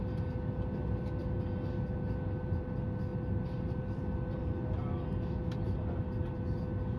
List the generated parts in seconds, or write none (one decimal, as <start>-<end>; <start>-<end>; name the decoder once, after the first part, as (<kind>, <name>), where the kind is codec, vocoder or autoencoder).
3.1-4.0 (vocoder, BigVGAN v2)